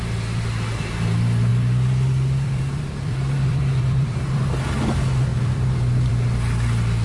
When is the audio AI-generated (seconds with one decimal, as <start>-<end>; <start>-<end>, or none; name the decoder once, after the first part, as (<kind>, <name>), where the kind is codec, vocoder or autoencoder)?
1.5-4.6 (vocoder, BigVGAN v2); 5.3-6.1